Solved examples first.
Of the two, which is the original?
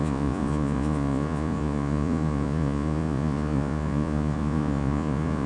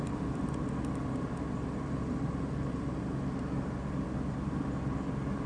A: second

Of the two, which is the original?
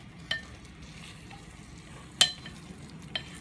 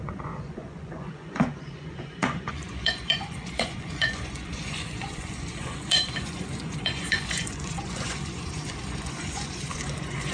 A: first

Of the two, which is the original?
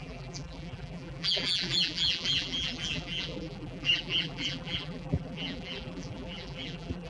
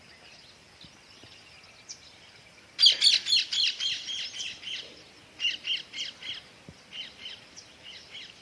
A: second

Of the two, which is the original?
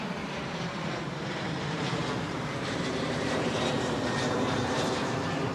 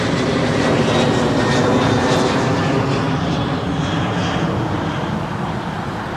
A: second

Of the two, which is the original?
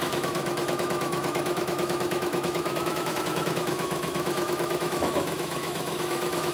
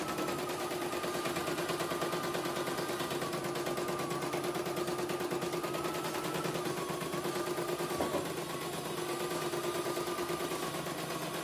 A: second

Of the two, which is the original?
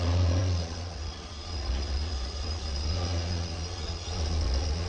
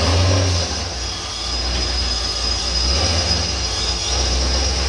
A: second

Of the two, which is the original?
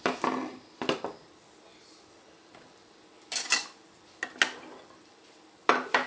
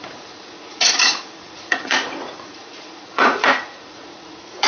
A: first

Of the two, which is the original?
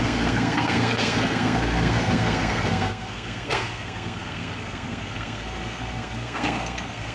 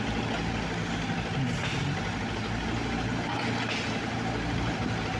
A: second